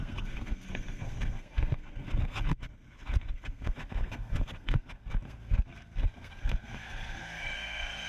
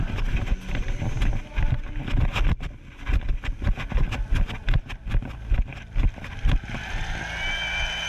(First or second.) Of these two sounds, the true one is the second